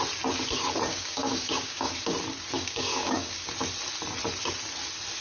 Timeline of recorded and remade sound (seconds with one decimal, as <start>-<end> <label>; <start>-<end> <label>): 0.0-0.9 recorded; 0.9-1.9 remade; 1.9-2.5 recorded; 2.5-3.5 remade; 3.5-5.2 recorded